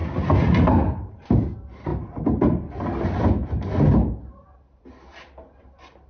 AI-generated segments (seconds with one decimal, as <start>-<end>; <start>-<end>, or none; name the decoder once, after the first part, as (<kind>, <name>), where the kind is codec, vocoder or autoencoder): none